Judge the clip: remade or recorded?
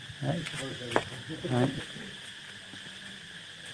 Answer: recorded